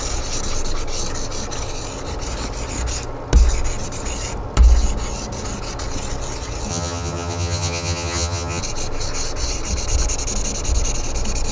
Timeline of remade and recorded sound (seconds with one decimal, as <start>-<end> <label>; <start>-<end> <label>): 0.0-6.7 recorded; 6.7-8.6 remade; 8.6-11.5 recorded